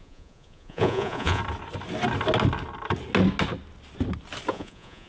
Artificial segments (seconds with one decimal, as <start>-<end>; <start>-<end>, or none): 0.0-1.4; 4.5-5.1